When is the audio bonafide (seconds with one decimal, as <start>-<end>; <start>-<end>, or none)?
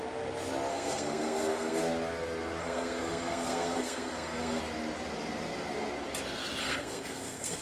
0.0-0.7; 1.8-2.6; 4.6-6.6